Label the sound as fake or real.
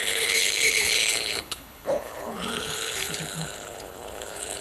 fake